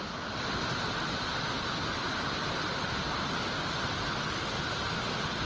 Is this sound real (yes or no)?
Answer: yes